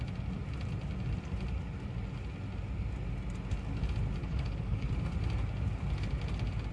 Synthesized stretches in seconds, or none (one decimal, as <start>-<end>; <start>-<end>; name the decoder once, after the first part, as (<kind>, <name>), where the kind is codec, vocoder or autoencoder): 4.2-4.9 (codec, HILCodec)